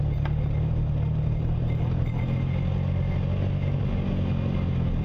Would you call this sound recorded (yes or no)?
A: yes